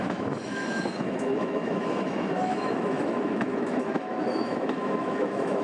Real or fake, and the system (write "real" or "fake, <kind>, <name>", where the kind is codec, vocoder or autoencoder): fake, autoencoder, DAC-VAE